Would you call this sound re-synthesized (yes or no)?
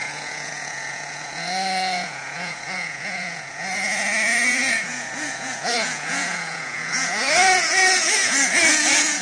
yes